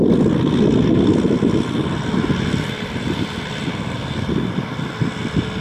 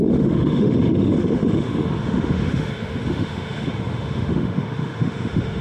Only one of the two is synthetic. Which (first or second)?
second